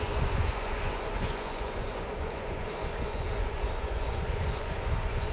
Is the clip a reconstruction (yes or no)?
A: yes